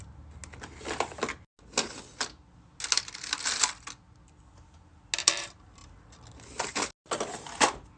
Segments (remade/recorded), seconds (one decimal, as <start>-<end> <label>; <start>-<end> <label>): 0.0-8.0 recorded